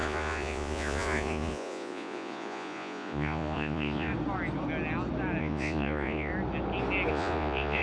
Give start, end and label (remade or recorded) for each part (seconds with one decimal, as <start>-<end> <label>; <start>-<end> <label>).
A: 0.0-4.1 remade; 4.1-5.4 recorded; 5.4-6.3 remade; 6.3-7.1 recorded; 7.1-7.8 remade